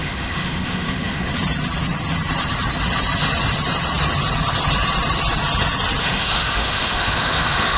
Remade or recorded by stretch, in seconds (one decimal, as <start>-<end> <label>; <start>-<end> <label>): 0.0-1.3 remade; 1.3-6.0 recorded; 6.0-7.8 remade